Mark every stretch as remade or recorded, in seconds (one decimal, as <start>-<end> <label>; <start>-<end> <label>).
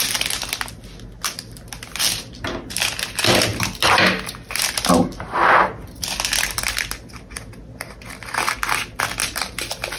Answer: 0.0-9.2 recorded; 9.2-10.0 remade